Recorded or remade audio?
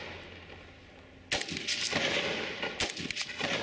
recorded